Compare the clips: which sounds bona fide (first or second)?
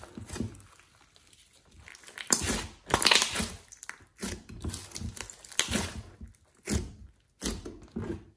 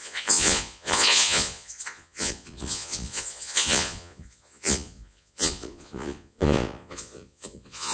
first